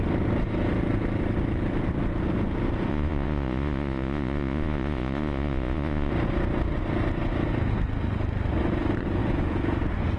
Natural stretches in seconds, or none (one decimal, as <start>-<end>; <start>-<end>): 0.0-2.9; 6.1-10.2